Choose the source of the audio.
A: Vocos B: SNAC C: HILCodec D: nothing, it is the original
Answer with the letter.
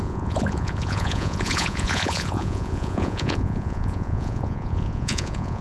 A